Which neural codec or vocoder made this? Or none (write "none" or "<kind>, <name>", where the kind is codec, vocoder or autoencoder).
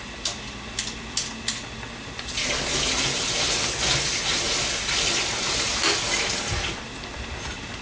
none